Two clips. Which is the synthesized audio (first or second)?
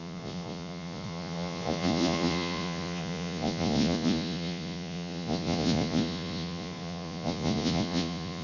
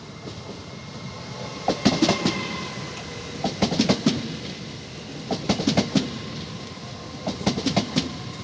first